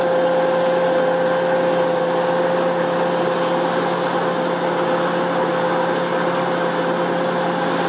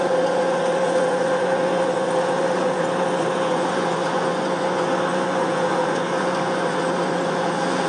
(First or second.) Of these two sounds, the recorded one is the first